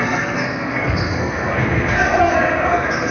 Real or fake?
fake